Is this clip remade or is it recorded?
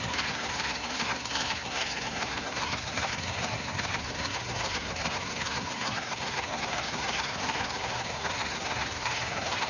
remade